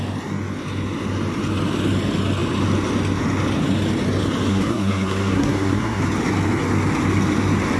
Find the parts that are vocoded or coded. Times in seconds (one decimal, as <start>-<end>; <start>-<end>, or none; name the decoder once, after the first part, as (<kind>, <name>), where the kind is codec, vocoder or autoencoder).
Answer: 4.5-6.0 (codec, SNAC)